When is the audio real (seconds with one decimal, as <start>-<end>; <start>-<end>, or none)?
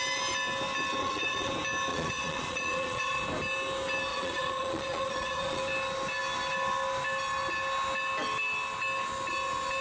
0.0-1.0; 1.5-1.9; 3.2-4.1; 5.6-9.8